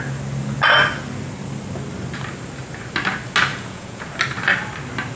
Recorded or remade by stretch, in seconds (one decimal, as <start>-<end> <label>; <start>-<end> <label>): 0.0-3.5 recorded; 3.5-4.1 remade; 4.1-5.2 recorded